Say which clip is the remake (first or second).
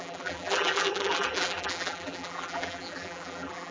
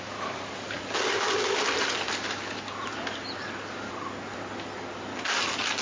first